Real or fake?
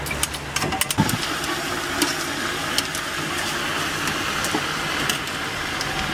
real